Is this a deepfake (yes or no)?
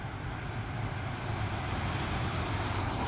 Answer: no